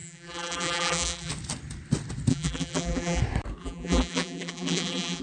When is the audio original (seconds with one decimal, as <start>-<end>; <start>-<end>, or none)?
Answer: 1.3-2.3; 3.2-3.6